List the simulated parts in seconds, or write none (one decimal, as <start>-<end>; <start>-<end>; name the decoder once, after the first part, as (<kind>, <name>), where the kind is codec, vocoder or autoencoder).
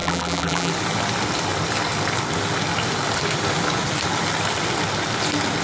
0.0-0.7 (vocoder, BigVGAN v2)